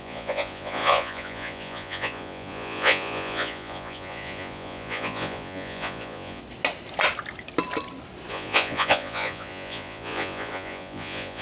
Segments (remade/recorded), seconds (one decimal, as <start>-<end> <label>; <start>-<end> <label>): 0.0-6.4 remade; 6.4-8.3 recorded; 8.3-11.4 remade